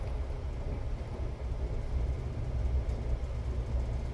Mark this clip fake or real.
real